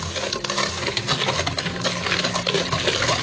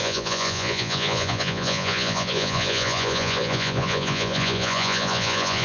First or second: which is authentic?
first